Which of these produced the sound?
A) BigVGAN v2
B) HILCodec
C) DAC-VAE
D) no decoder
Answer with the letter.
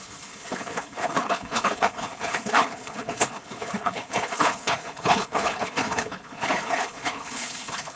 B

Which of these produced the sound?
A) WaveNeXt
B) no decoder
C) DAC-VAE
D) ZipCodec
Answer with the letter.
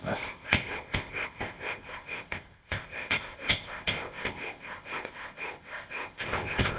D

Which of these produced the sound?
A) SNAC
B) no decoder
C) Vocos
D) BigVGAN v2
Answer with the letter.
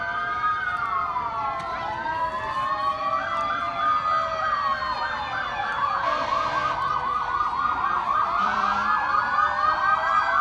D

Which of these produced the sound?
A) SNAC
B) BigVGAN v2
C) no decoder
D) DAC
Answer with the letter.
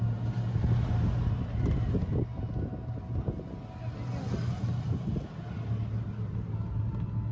C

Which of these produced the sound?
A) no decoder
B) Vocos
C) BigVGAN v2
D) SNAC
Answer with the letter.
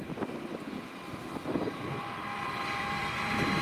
C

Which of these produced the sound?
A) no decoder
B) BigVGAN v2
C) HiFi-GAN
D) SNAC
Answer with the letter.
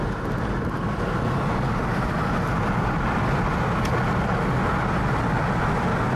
A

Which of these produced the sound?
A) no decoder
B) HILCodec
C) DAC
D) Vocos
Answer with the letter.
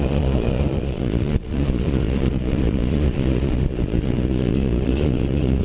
D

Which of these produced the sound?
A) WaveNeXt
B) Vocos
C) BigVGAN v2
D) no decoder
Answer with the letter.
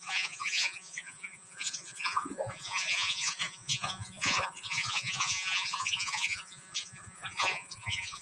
B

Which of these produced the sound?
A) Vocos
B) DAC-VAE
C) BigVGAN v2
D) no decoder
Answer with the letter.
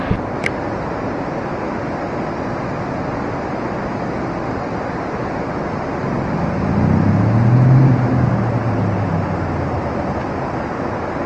D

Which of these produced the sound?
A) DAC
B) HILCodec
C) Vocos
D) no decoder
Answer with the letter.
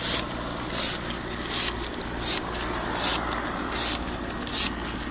D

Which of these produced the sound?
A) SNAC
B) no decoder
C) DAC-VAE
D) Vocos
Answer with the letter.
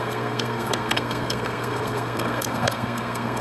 A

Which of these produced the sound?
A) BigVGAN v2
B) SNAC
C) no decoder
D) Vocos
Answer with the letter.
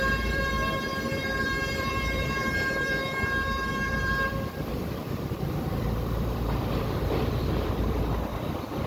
A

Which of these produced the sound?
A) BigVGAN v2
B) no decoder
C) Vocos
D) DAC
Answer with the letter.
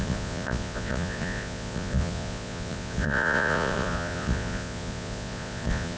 C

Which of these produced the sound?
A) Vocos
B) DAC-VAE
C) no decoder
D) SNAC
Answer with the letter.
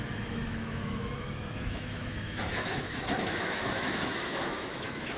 B